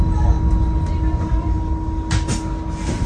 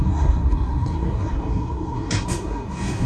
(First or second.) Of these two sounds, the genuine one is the first